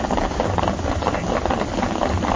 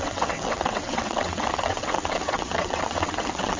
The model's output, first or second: second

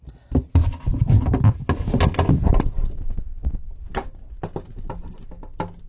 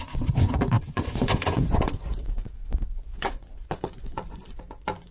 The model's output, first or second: second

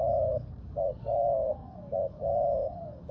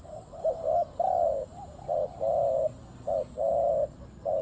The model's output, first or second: first